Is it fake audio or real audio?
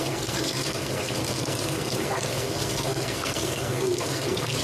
fake